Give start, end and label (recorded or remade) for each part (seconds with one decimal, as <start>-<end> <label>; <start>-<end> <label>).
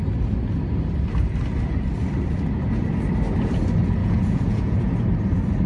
0.0-4.0 recorded; 4.0-4.9 remade; 4.9-5.7 recorded